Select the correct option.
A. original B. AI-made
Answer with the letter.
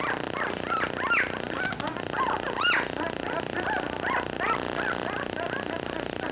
A